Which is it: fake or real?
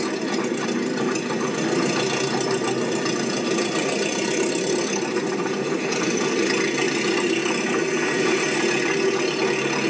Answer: real